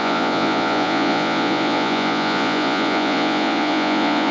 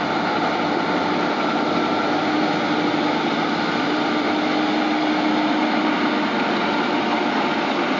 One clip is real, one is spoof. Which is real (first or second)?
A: second